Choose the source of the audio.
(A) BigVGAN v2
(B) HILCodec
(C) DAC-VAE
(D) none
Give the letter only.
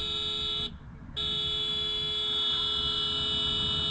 D